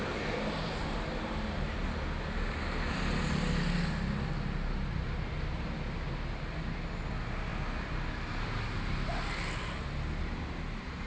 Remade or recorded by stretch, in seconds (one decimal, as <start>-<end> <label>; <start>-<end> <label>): 0.0-11.1 recorded